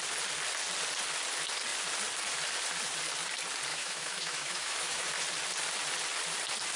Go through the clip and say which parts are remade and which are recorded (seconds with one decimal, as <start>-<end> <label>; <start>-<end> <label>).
0.0-3.7 recorded; 3.7-5.1 remade; 5.1-6.8 recorded